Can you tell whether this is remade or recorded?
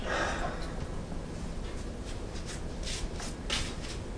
recorded